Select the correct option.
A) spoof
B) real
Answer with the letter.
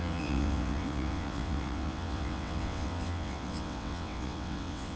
A